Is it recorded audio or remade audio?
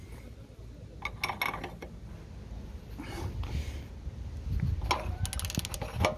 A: recorded